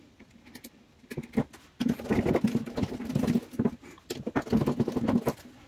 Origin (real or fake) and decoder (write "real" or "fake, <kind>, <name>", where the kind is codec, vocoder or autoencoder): real